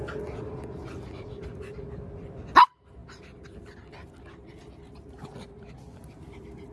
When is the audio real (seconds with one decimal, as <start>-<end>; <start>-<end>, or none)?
0.0-6.7